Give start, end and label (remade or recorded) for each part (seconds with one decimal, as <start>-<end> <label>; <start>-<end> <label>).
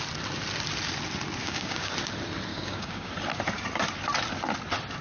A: 0.0-1.4 recorded; 1.4-1.9 remade; 1.9-2.5 recorded; 2.5-3.1 remade; 3.1-5.0 recorded